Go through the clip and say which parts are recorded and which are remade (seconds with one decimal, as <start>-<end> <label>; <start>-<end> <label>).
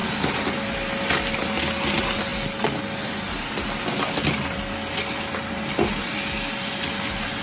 0.0-0.5 remade; 0.5-7.4 recorded